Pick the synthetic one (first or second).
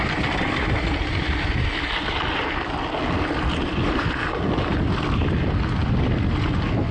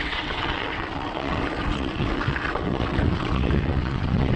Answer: second